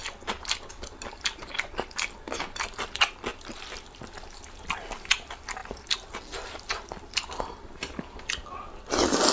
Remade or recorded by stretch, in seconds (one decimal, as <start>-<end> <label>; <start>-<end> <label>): 0.0-3.3 recorded; 3.3-4.0 remade; 4.0-9.3 recorded